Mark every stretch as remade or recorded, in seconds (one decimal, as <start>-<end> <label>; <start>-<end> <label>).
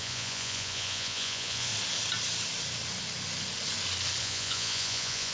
0.0-1.7 remade; 1.7-4.2 recorded; 4.2-5.3 remade